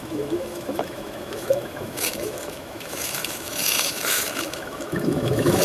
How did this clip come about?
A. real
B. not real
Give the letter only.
B